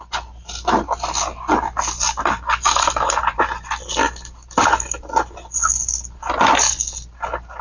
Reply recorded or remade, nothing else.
recorded